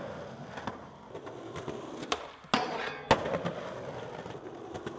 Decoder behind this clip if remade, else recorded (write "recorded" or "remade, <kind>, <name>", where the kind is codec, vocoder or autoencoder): recorded